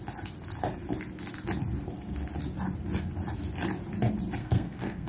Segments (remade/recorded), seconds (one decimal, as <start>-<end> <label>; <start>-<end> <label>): 0.0-4.4 recorded; 4.4-5.1 remade